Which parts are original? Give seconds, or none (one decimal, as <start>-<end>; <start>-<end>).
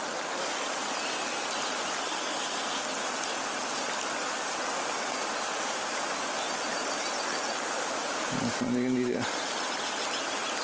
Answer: 0.0-2.1; 2.8-10.6